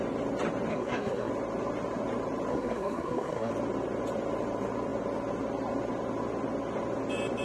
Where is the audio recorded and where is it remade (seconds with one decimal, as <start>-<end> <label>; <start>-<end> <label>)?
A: 0.0-0.7 recorded; 0.7-1.3 remade; 1.3-2.5 recorded; 2.5-3.5 remade; 3.5-7.4 recorded